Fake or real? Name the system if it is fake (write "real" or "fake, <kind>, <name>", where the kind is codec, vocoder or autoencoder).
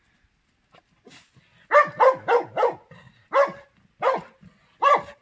real